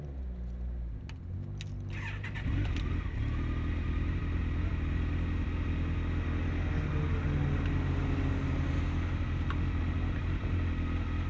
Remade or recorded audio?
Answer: recorded